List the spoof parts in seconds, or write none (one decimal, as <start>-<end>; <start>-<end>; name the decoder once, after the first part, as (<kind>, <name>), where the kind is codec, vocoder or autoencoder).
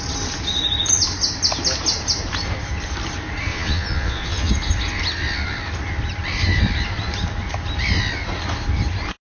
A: 3.5-4.5 (vocoder, Vocos)